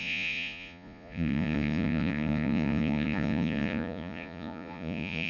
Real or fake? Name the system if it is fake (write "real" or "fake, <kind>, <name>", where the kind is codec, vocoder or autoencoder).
fake, vocoder, Vocos